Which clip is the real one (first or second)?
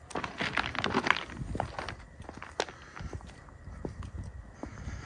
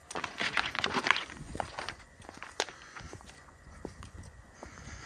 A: first